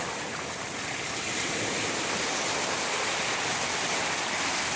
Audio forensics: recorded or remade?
recorded